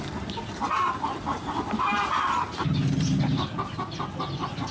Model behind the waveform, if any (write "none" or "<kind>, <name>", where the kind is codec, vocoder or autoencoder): none